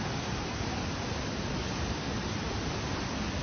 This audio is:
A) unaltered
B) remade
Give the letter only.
A